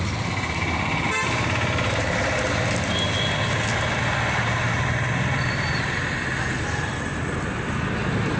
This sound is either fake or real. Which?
real